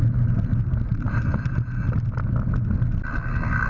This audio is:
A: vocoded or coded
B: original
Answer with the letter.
B